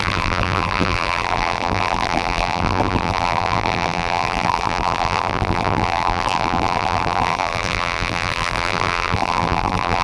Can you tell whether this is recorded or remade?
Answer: remade